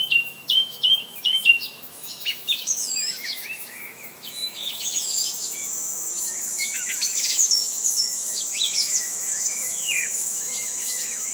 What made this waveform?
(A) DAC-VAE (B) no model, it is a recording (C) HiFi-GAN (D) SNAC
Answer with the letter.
A